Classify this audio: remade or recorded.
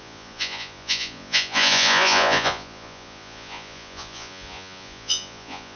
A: remade